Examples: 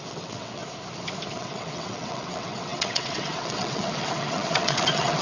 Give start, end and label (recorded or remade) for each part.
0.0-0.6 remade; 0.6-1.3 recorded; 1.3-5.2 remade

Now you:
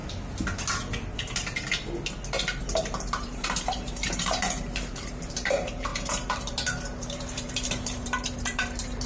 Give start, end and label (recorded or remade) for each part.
0.0-2.6 recorded; 2.6-9.1 remade

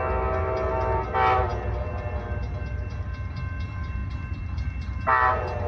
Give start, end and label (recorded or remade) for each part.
0.0-4.0 recorded; 4.0-5.0 remade; 5.0-5.7 recorded

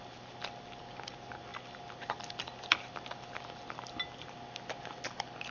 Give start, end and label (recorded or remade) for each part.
0.0-5.5 recorded

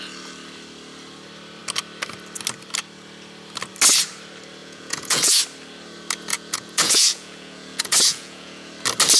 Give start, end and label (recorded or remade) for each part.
0.0-4.6 recorded; 4.6-5.4 remade; 5.4-6.3 recorded; 6.3-8.7 remade; 8.7-9.2 recorded